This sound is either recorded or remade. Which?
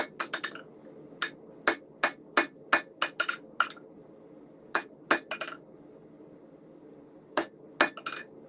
recorded